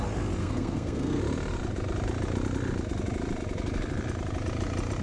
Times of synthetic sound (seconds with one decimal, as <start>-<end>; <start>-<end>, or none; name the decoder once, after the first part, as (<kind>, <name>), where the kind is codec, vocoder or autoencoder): 0.4-1.2 (codec, SNAC)